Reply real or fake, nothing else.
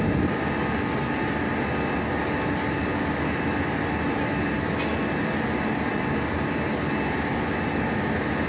real